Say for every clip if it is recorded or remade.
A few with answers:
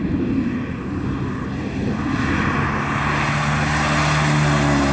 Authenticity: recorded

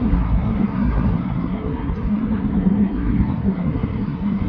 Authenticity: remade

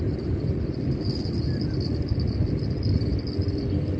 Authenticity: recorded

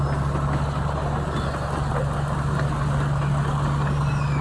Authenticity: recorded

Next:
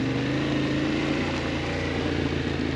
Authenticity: recorded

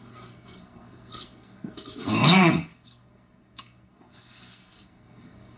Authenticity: remade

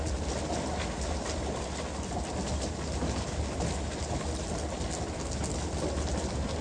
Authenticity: recorded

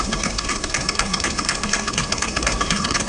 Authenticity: remade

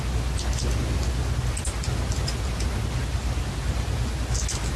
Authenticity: recorded